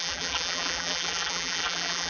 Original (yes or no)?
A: no